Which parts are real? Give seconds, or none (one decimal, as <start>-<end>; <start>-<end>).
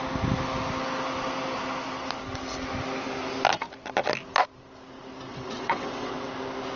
0.0-5.3; 6.3-6.8